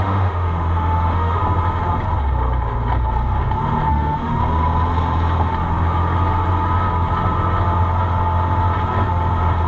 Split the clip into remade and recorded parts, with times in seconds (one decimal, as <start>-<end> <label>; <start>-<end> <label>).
0.0-1.4 remade; 1.4-3.9 recorded; 3.9-4.4 remade; 4.4-9.7 recorded